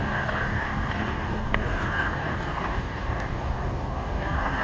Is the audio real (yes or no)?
no